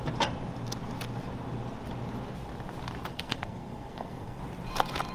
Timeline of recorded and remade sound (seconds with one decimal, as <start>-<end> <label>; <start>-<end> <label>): 0.0-3.1 recorded; 3.1-4.4 remade; 4.4-5.1 recorded